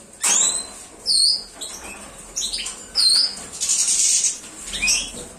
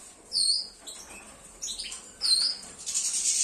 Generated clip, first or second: second